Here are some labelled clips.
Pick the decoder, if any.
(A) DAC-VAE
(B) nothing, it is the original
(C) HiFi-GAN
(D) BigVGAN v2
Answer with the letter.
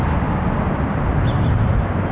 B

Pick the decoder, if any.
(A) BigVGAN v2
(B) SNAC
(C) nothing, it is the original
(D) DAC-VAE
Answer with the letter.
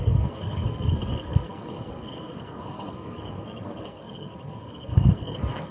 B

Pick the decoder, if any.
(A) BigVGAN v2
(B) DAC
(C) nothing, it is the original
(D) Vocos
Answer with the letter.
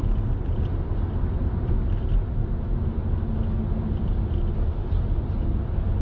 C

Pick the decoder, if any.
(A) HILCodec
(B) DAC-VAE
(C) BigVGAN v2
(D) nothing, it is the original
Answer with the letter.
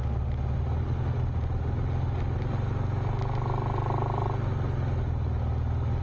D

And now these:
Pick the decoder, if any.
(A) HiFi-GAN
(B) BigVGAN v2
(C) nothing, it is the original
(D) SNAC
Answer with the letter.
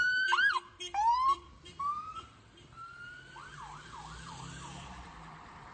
B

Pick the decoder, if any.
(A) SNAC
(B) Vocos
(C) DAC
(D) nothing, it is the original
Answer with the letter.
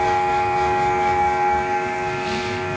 C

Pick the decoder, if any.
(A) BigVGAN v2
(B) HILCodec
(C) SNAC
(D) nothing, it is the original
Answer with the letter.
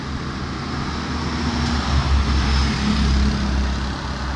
D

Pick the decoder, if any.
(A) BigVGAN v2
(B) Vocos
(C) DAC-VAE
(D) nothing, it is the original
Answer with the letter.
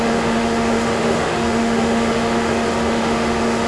C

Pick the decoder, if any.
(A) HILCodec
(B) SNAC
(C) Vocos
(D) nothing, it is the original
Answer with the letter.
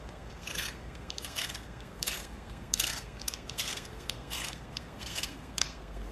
B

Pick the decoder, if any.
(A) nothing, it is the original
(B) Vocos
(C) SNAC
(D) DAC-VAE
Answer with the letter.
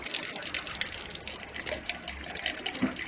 A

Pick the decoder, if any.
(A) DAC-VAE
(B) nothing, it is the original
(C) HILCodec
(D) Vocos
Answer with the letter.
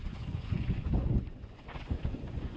D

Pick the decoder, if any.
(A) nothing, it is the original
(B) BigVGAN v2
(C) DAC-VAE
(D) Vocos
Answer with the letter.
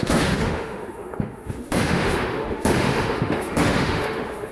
C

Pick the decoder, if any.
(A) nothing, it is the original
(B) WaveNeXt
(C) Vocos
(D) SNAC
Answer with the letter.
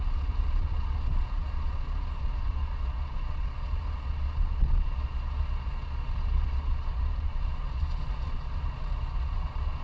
C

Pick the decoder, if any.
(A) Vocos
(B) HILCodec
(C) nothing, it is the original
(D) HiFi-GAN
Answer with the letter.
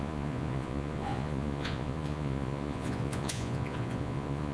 A